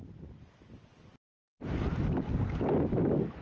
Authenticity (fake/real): real